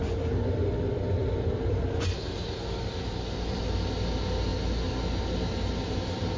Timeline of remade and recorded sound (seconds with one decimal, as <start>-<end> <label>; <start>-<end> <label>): 0.0-1.2 recorded; 1.2-3.6 remade; 3.6-6.4 recorded